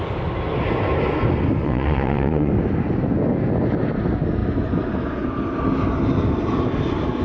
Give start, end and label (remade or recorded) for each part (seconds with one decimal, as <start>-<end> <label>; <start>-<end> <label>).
0.0-1.6 recorded; 1.6-2.5 remade; 2.5-7.2 recorded